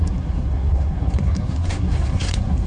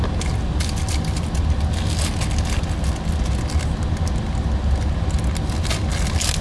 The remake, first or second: first